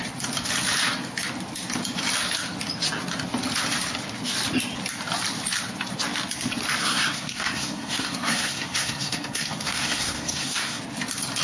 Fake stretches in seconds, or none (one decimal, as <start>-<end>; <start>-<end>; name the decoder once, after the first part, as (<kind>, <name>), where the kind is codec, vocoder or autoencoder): 6.8-10.8 (codec, SNAC)